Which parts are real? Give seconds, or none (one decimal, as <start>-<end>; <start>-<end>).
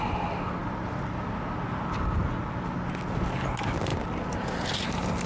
0.0-5.3